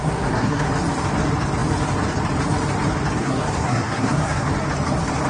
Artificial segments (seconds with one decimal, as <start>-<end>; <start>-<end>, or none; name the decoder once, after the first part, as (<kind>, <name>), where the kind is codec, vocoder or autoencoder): 0.0-0.7 (codec, SNAC); 3.2-4.5